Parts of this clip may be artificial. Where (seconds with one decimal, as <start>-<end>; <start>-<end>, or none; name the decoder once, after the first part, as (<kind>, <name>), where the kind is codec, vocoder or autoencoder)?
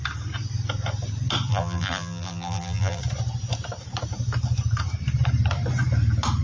1.5-3.0 (vocoder, BigVGAN v2)